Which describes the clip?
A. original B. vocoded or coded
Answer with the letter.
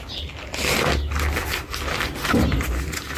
A